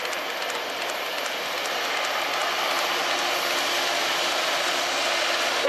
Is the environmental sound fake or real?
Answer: real